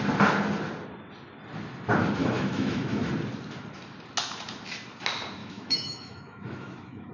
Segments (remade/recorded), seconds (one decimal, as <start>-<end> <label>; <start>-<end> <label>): 0.0-2.2 recorded; 2.2-3.1 remade; 3.1-5.4 recorded; 5.4-7.1 remade